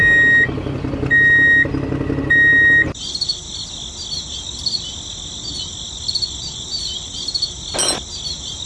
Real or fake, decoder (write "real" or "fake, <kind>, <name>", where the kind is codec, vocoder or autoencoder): real